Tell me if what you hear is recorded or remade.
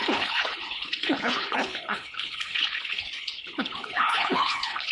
remade